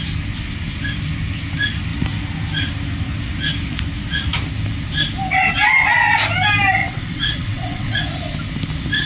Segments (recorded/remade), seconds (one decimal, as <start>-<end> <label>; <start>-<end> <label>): 0.0-6.8 recorded; 6.8-8.0 remade; 8.0-9.1 recorded